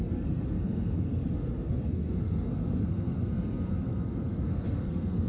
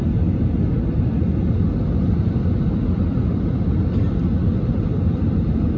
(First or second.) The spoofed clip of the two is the first